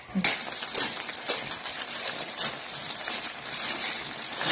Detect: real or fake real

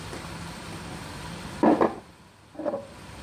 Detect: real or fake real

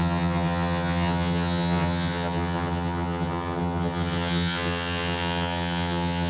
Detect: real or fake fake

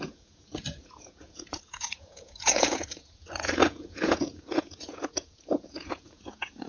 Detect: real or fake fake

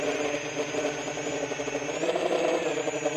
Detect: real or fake real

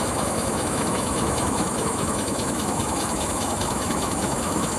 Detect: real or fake fake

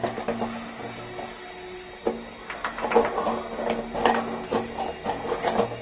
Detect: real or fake real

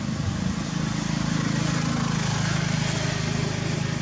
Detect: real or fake real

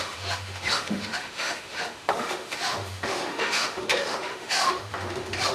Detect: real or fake fake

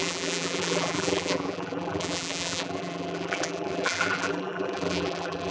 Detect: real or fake fake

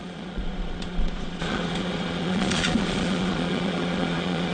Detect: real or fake fake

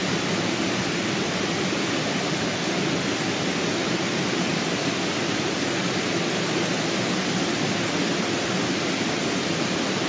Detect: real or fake real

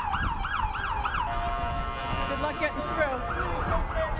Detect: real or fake real